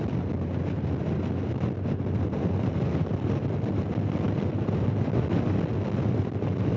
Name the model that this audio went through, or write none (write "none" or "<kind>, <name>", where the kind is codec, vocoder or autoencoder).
none